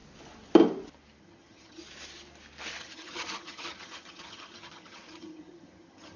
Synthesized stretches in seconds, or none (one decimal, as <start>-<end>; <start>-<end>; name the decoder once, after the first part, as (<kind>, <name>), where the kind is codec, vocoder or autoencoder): 1.2-1.8 (vocoder, HiFi-GAN); 2.8-6.2